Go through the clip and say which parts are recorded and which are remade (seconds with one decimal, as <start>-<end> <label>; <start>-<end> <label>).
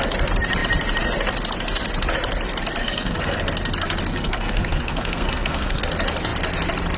0.0-2.8 recorded; 2.8-3.4 remade; 3.4-4.1 recorded; 4.1-5.8 remade; 5.8-7.0 recorded